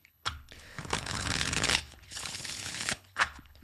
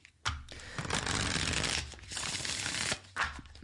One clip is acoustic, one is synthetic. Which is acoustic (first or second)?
second